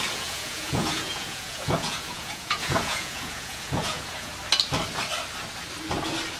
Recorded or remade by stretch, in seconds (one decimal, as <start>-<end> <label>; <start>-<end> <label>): 0.0-4.3 remade; 4.3-6.4 recorded